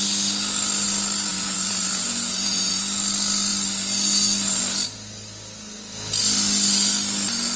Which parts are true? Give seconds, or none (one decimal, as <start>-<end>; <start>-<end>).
0.0-1.3; 2.8-7.6